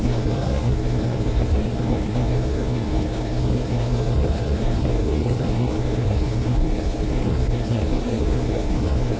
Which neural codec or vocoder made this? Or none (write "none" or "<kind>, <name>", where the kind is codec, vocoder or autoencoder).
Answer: codec, SNAC